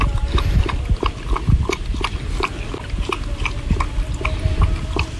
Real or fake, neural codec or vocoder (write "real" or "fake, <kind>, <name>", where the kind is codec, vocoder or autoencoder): real